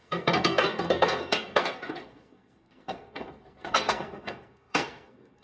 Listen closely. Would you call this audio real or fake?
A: fake